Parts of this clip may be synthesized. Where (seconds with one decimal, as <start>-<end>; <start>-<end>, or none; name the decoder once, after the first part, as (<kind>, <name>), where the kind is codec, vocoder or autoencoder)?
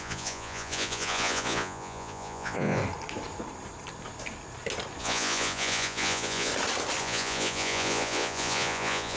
0.0-2.8 (vocoder, Vocos); 5.0-6.5; 7.0-9.2